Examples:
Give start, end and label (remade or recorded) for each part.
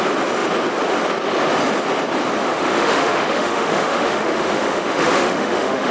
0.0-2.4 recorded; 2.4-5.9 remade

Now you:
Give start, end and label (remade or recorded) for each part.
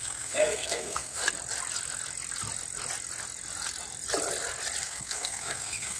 0.0-1.2 remade; 1.2-4.8 recorded; 4.8-6.0 remade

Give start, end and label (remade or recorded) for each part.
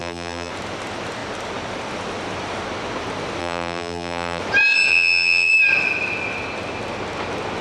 0.0-0.5 remade; 0.5-3.4 recorded; 3.4-4.4 remade; 4.4-4.9 recorded; 4.9-5.5 remade; 5.5-7.6 recorded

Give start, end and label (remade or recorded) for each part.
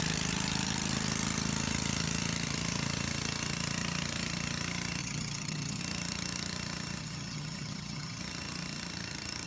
0.0-5.0 recorded; 5.0-5.8 remade; 5.8-7.0 recorded; 7.0-8.2 remade; 8.2-9.5 recorded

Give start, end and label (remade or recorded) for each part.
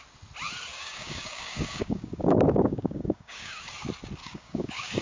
0.0-0.7 recorded; 0.7-3.7 remade; 3.7-4.2 recorded; 4.2-5.0 remade